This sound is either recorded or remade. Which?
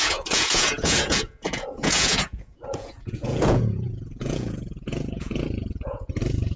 remade